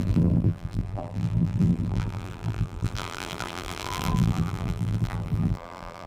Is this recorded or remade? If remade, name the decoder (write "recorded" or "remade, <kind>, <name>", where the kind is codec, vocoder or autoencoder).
remade, vocoder, BigVGAN v2